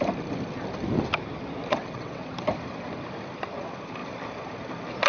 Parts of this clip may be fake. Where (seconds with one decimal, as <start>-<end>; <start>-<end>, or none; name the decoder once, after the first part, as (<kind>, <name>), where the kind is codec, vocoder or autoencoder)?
1.7-2.3 (vocoder, WaveNeXt)